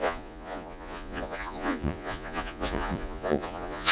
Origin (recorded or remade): remade